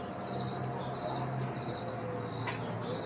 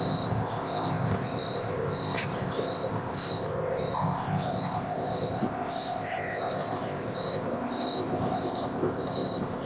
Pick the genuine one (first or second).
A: first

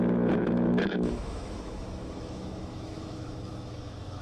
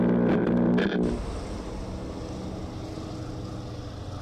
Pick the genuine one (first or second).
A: second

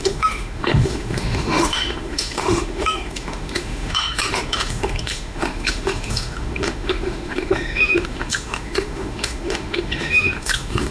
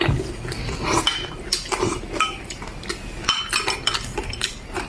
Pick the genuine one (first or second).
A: second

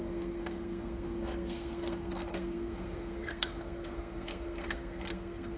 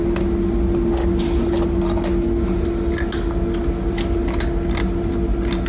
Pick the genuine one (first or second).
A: second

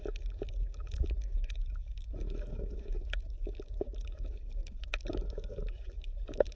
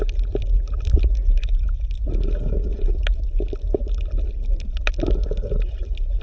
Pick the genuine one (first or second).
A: second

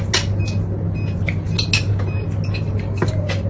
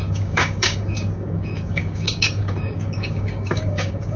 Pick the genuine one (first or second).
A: first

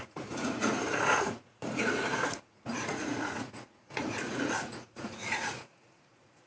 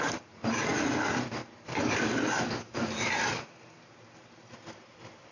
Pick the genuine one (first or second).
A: second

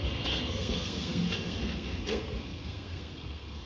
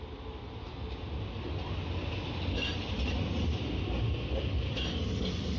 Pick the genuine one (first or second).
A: second